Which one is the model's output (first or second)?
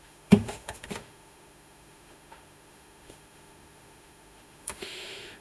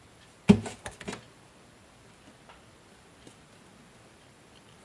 first